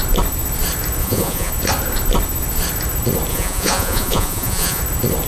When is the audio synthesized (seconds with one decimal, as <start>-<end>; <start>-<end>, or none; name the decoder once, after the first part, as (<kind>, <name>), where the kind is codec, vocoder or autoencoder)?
1.0-1.5 (vocoder, Vocos); 3.3-4.8